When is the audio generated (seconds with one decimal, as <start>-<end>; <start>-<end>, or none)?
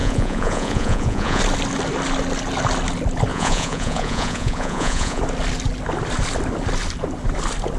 0.0-1.4; 3.3-5.2